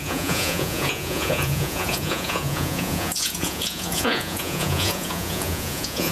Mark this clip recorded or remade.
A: remade